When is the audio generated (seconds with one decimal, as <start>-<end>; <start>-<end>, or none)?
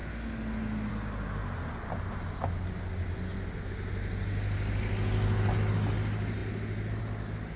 none